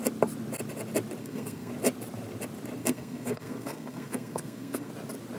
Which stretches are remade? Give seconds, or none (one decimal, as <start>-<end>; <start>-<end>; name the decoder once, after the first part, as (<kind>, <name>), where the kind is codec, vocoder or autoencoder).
1.2-1.7 (codec, SNAC); 2.8-4.9